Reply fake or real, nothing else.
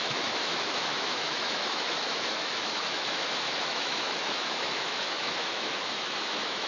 fake